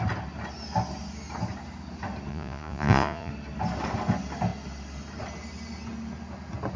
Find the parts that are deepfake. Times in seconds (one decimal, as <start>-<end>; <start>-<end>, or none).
2.3-3.3